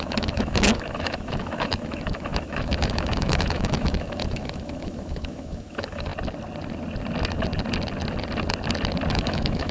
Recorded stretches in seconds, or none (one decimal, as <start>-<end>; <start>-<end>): 6.1-9.1